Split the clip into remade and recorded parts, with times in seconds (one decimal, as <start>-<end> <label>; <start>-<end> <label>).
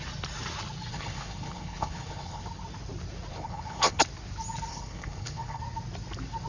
0.0-0.9 recorded; 0.9-2.4 remade; 2.4-3.3 recorded; 3.3-4.0 remade; 4.0-4.7 recorded; 4.7-5.6 remade; 5.6-6.5 recorded